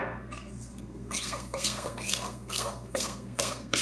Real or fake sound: fake